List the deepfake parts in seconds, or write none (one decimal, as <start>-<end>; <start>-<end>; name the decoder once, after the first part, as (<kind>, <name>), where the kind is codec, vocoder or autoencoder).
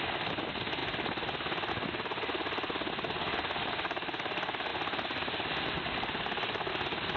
none